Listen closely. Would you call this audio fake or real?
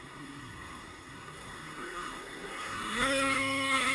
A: fake